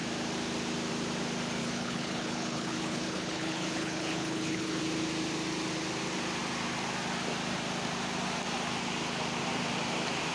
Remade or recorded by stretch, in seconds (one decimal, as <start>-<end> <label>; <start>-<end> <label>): 0.0-1.6 recorded; 1.6-4.8 remade; 4.8-10.3 recorded